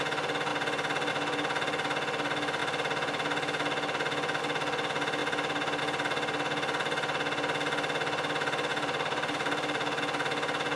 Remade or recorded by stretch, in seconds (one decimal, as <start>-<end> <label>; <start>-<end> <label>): 0.0-8.7 recorded; 8.7-10.0 remade; 10.0-10.8 recorded